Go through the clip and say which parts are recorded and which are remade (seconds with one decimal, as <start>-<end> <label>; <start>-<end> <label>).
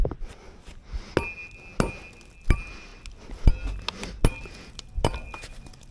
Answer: 0.0-5.9 recorded